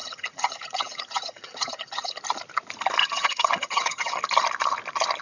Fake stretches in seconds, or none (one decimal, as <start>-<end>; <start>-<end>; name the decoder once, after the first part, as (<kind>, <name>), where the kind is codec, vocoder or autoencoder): 0.0-2.2 (vocoder, HiFi-GAN); 3.0-4.2